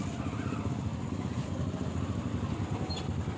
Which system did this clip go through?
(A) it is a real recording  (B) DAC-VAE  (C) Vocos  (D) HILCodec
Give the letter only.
A